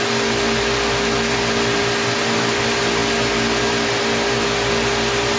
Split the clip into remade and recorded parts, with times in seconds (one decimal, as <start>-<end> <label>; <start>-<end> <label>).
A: 0.0-5.4 recorded

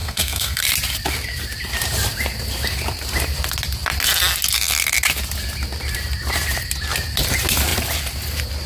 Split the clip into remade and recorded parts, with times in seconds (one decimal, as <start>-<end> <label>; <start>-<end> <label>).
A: 0.0-0.6 remade; 0.6-8.7 recorded

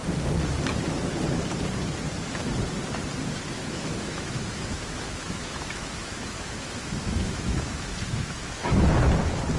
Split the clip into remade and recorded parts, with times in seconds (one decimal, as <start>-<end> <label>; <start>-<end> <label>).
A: 0.0-3.6 recorded; 3.6-8.8 remade; 8.8-9.6 recorded

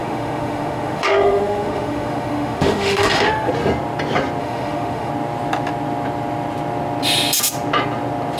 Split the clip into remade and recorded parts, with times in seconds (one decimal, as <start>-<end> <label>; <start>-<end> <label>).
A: 0.0-3.5 remade; 3.5-4.4 recorded; 4.4-5.1 remade; 5.1-8.4 recorded

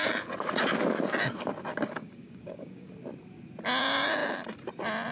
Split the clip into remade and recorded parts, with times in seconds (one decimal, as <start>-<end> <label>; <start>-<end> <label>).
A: 0.0-1.7 recorded; 1.7-2.9 remade; 2.9-5.1 recorded

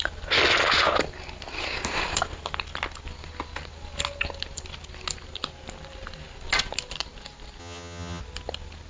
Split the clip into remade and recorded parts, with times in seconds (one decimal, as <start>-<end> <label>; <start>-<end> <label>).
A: 0.0-7.6 recorded; 7.6-8.2 remade; 8.2-8.9 recorded